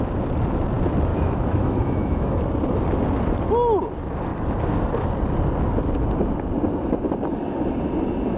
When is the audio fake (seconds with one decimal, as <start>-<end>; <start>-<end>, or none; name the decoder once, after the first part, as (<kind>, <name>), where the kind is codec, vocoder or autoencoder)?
1.1-2.4 (autoencoder, DAC-VAE)